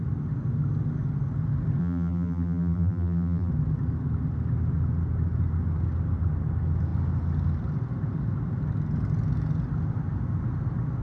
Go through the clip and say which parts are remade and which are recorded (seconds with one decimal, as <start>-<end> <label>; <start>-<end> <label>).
0.0-1.8 recorded; 1.8-3.5 remade; 3.5-11.0 recorded